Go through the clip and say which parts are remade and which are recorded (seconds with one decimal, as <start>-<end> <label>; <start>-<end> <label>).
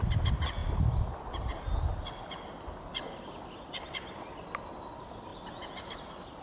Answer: 0.0-6.4 recorded